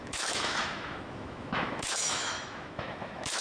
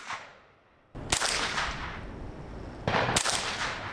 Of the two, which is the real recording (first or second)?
second